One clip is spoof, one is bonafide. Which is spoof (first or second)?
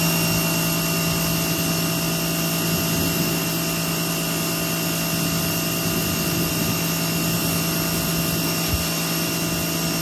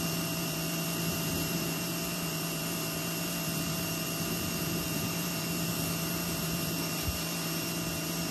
second